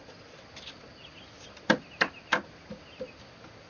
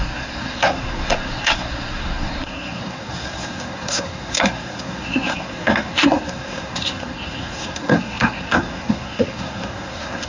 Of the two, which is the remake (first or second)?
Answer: second